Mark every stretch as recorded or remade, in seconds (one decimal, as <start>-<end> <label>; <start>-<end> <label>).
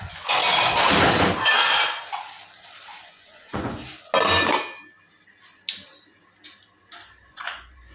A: 0.0-0.4 remade; 0.4-3.0 recorded; 3.0-3.8 remade; 3.8-7.3 recorded; 7.3-7.9 remade